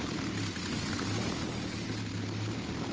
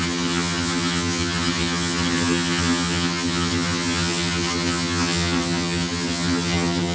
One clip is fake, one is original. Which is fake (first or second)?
second